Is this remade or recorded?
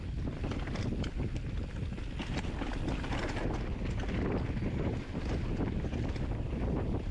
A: recorded